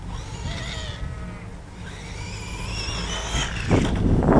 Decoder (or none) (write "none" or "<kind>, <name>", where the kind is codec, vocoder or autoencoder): none